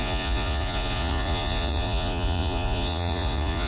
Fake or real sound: fake